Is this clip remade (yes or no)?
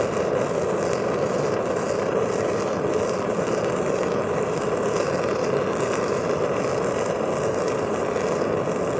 no